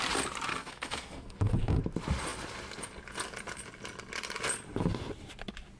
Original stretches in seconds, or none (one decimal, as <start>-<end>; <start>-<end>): 0.0-0.5; 1.8-5.8